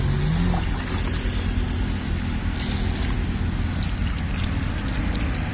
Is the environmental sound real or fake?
real